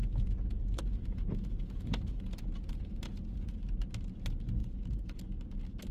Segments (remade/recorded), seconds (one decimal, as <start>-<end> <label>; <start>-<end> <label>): 0.0-3.5 remade; 3.5-4.6 recorded; 4.6-5.2 remade; 5.2-5.9 recorded